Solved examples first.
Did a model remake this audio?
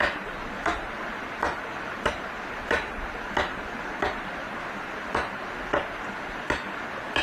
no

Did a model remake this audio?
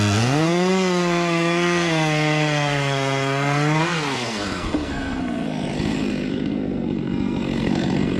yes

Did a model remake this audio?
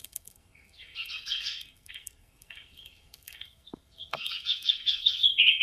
yes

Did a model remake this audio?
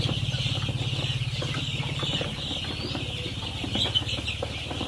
no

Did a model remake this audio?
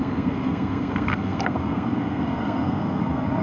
yes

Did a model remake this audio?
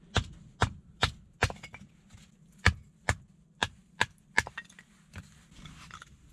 no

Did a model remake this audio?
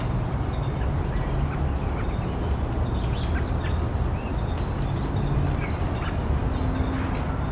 no